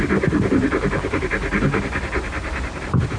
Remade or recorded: recorded